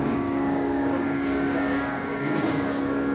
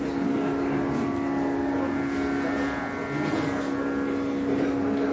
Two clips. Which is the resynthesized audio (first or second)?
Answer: first